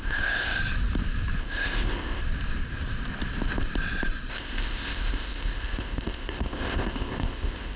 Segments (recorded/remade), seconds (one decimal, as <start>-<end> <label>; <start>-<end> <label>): 0.0-0.6 remade; 0.6-1.4 recorded; 1.4-2.2 remade; 2.2-4.3 recorded; 4.3-7.8 remade